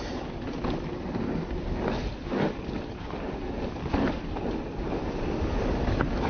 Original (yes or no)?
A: yes